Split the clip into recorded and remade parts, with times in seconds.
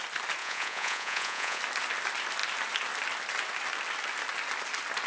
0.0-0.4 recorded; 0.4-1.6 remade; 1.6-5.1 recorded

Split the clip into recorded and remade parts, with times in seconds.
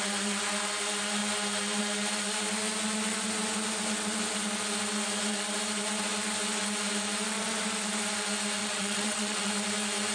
0.0-8.6 recorded; 8.6-9.5 remade; 9.5-10.1 recorded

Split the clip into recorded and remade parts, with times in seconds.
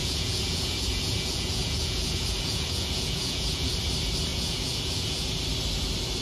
0.0-3.7 remade; 3.7-4.3 recorded; 4.3-5.4 remade; 5.4-6.2 recorded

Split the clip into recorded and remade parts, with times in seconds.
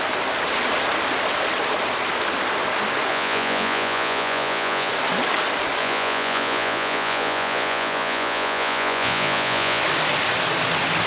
0.0-3.1 recorded; 3.1-4.9 remade; 4.9-5.8 recorded; 5.8-9.8 remade; 9.8-11.1 recorded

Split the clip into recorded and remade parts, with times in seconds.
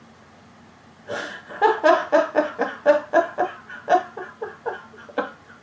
0.0-5.6 recorded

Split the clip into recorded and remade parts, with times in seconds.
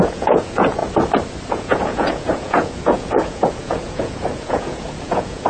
0.0-0.8 remade; 0.8-1.5 recorded; 1.5-5.5 remade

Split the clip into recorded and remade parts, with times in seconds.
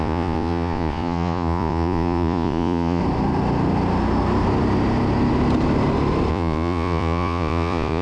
0.0-3.0 remade; 3.0-6.3 recorded; 6.3-8.0 remade